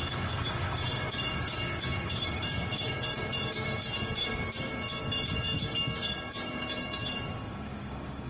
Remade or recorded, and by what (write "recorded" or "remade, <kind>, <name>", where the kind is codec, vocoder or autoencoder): remade, codec, DAC